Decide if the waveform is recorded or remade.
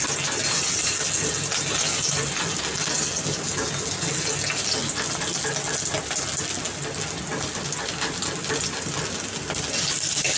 recorded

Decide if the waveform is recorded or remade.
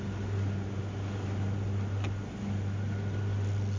recorded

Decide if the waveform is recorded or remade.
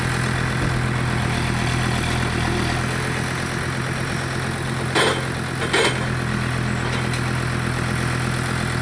recorded